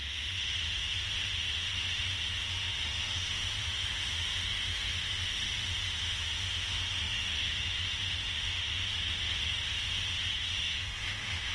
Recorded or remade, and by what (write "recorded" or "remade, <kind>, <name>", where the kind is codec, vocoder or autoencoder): remade, autoencoder, DAC-VAE